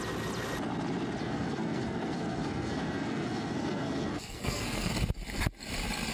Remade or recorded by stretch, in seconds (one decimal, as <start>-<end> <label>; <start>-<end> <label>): 0.0-1.2 recorded; 1.2-4.9 remade; 4.9-6.1 recorded